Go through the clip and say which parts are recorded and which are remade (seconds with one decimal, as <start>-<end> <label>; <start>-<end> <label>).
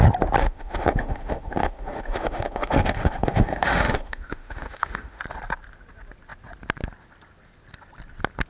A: 0.0-0.4 recorded; 0.4-5.2 remade; 5.2-8.5 recorded